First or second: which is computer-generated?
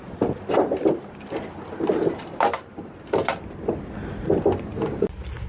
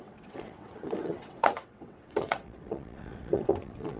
second